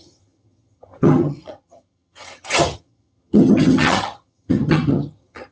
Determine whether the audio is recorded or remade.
remade